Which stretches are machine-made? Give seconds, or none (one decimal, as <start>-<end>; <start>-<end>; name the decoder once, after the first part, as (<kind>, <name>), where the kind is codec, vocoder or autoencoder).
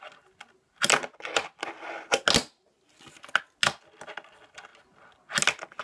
none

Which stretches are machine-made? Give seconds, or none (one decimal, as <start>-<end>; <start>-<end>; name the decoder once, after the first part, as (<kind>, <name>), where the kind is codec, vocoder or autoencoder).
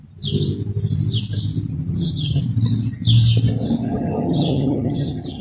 1.7-2.4 (vocoder, HiFi-GAN); 3.9-5.4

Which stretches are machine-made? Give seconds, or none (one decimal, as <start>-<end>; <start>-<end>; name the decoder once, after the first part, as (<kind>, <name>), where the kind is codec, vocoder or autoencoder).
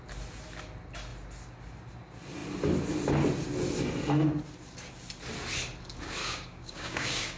6.2-7.4 (codec, DAC)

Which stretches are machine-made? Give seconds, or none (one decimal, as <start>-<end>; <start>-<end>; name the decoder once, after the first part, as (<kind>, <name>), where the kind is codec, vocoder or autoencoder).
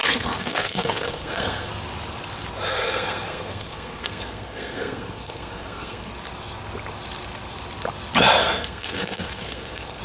0.0-1.7 (codec, SNAC); 2.7-6.1; 8.4-10.0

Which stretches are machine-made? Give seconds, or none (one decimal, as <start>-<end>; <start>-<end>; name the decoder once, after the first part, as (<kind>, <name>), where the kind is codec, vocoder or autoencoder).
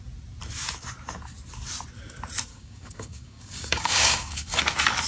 2.5-4.6 (codec, DAC)